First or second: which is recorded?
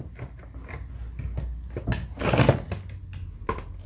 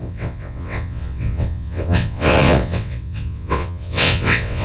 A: first